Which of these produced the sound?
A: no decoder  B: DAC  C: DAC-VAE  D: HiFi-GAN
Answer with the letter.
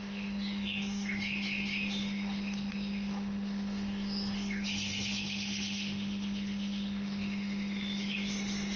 C